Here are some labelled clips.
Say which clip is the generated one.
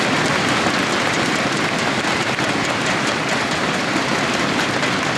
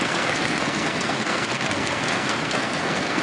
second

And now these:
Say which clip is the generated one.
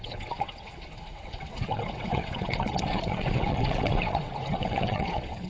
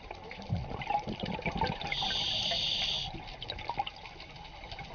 first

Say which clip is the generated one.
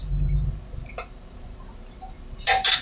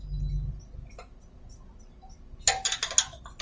first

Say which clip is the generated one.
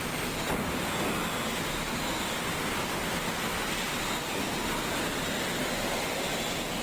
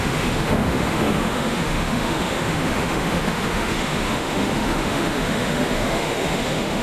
second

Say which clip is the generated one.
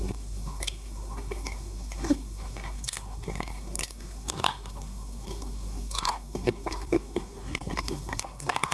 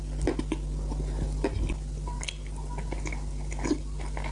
first